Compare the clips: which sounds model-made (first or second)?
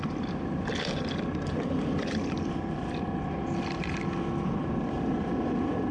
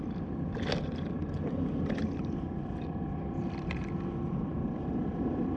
second